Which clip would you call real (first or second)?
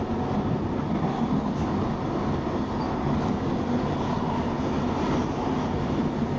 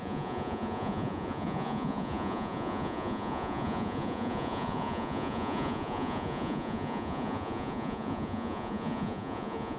first